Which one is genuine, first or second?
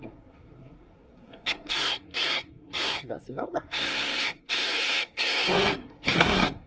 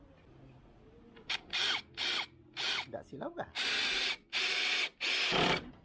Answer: second